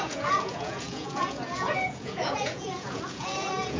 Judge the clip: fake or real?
fake